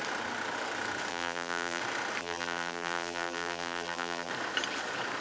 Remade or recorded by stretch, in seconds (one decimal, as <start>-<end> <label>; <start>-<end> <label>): 0.0-1.1 recorded; 1.1-1.8 remade; 1.8-2.2 recorded; 2.2-4.3 remade; 4.3-5.2 recorded

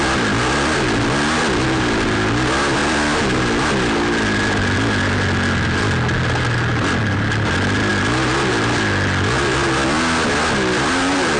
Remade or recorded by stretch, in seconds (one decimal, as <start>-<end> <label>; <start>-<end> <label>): 0.0-11.4 recorded

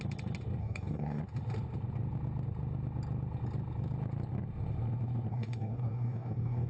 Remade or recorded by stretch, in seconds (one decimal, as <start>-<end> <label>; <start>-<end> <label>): 0.0-0.6 recorded; 0.6-1.2 remade; 1.2-5.3 recorded; 5.3-6.7 remade

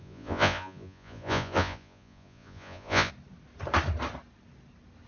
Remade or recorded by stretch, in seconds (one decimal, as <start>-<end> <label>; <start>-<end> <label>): 0.0-3.1 remade; 3.1-5.1 recorded